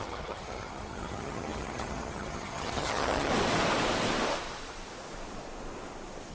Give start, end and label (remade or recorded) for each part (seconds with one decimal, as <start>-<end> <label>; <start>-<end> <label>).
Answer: 0.0-3.3 remade; 3.3-6.3 recorded